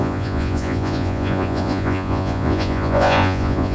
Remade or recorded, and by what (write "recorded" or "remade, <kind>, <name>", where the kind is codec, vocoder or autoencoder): remade, vocoder, Vocos